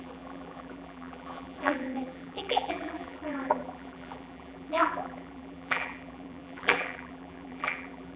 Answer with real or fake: fake